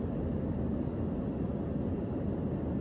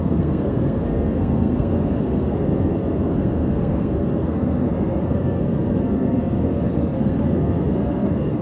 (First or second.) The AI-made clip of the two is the second